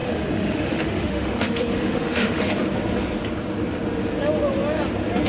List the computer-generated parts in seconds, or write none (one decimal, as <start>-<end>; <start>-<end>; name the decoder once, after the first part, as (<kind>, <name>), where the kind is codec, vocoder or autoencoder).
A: 0.0-2.5 (autoencoder, DAC-VAE)